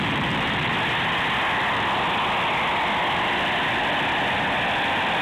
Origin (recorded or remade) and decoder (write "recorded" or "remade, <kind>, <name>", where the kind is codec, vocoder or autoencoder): recorded